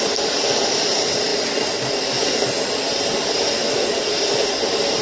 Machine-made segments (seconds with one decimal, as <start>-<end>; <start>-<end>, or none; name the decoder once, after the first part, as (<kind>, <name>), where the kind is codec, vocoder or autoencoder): none